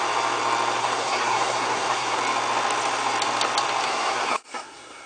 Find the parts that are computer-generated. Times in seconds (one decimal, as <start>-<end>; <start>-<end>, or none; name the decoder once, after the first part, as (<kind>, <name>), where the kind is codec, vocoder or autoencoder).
0.8-2.2 (codec, SNAC); 3.8-5.1